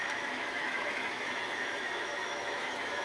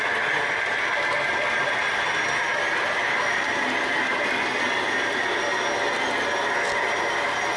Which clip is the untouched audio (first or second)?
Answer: second